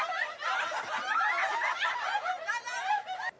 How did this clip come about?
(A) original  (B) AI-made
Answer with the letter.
A